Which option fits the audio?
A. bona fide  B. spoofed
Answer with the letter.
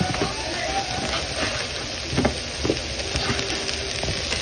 A